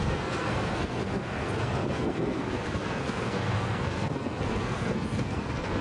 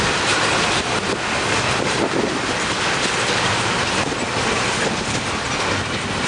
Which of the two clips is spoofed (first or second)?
first